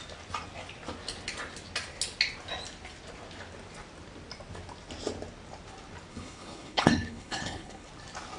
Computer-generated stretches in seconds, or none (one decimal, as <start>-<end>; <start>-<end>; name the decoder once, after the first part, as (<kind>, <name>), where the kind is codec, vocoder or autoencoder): 6.1-7.9 (codec, HILCodec)